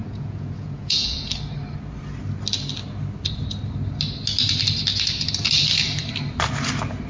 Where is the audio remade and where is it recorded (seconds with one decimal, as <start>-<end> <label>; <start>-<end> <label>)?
0.0-1.3 remade; 1.3-7.1 recorded